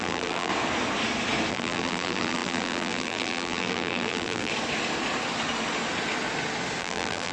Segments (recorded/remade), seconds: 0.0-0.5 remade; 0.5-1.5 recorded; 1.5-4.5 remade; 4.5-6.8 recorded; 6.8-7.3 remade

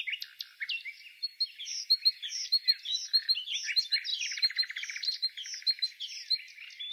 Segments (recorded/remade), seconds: 0.0-1.7 recorded; 1.7-3.0 remade; 3.0-4.1 recorded; 4.1-5.3 remade; 5.3-6.9 recorded

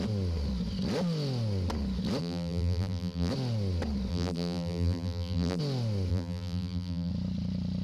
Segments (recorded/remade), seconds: 0.0-2.2 recorded; 2.2-3.3 remade; 3.3-4.1 recorded; 4.1-5.6 remade; 5.6-6.1 recorded; 6.1-7.1 remade; 7.1-7.8 recorded

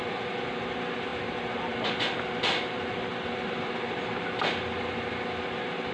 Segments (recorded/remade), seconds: 0.0-5.9 recorded

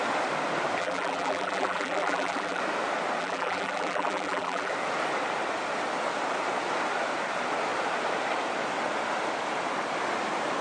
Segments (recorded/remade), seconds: 0.0-0.8 recorded; 0.8-2.6 remade; 2.6-3.2 recorded; 3.2-4.7 remade; 4.7-10.6 recorded